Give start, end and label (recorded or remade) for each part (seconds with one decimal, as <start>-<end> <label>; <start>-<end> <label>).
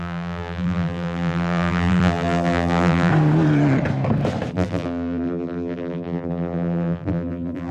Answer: 0.0-3.1 remade; 3.1-4.5 recorded; 4.5-7.7 remade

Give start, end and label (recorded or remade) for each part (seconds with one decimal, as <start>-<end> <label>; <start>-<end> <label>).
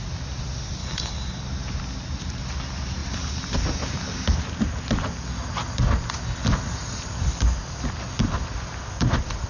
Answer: 0.0-0.8 recorded; 0.8-1.4 remade; 1.4-9.5 recorded